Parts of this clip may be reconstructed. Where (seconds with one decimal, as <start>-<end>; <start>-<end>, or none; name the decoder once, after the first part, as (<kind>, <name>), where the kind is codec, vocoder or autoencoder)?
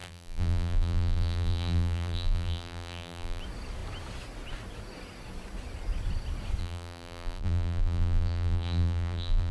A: 0.0-3.4 (vocoder, BigVGAN v2); 6.6-9.5